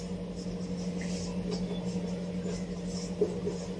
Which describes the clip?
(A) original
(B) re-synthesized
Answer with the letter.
A